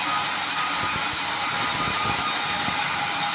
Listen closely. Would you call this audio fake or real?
real